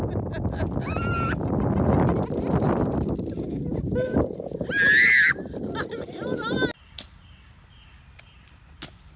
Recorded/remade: recorded